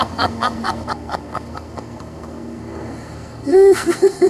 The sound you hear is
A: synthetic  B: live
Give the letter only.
A